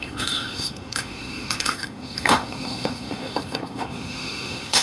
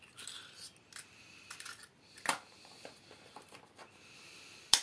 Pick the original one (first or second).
second